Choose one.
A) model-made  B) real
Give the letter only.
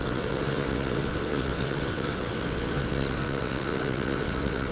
A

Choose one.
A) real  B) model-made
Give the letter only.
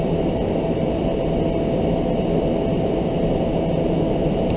A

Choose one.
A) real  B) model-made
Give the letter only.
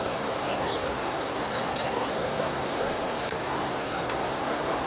B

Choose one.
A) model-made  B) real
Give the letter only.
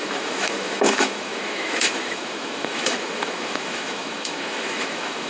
A